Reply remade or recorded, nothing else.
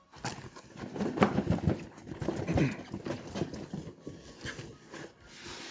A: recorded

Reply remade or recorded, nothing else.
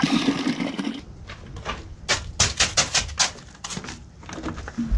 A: recorded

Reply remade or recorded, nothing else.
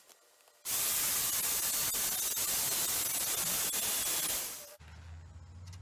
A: recorded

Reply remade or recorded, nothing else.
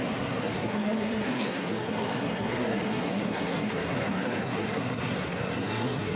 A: remade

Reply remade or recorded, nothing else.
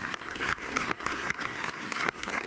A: remade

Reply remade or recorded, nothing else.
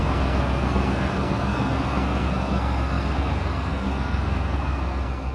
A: remade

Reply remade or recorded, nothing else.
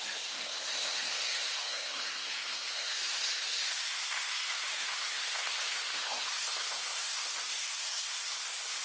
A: remade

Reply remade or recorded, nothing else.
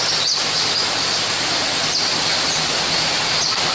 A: recorded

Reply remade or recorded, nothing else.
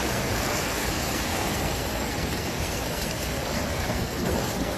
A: remade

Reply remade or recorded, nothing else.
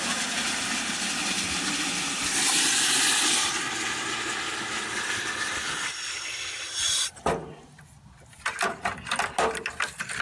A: recorded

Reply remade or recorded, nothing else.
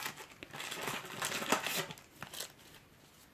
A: recorded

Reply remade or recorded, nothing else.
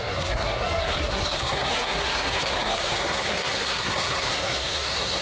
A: remade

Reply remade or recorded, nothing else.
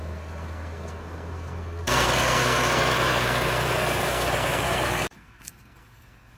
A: remade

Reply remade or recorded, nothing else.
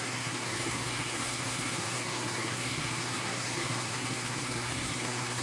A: remade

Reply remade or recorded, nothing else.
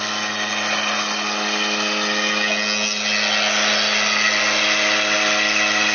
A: recorded